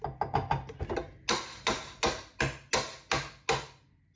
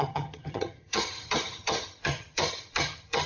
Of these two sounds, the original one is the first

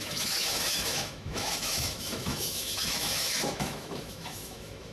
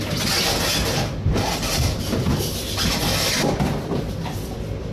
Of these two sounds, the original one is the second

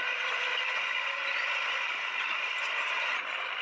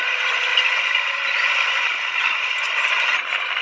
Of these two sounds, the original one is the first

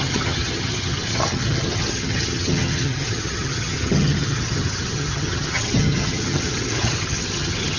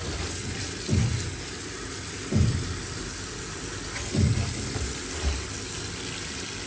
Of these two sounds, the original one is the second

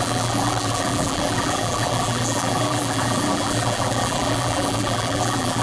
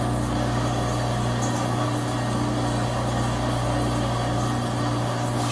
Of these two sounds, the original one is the second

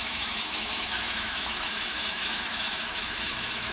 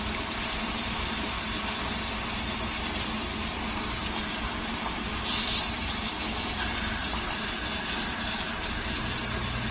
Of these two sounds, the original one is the second